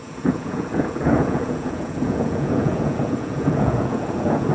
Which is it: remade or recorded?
remade